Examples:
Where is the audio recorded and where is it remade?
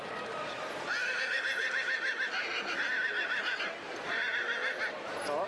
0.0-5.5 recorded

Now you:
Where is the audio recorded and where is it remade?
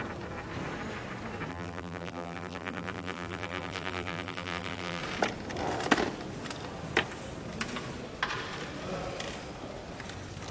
0.0-1.5 recorded; 1.5-5.0 remade; 5.0-10.5 recorded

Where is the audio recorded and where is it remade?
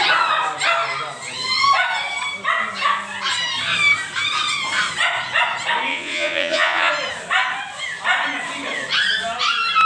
0.0-5.9 recorded; 5.9-6.9 remade; 6.9-9.9 recorded